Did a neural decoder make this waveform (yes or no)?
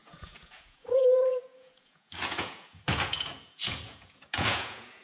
yes